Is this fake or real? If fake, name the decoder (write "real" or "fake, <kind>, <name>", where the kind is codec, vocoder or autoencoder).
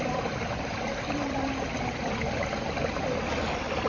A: real